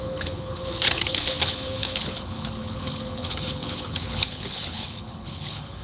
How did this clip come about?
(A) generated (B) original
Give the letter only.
A